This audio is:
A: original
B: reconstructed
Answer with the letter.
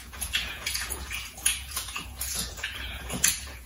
B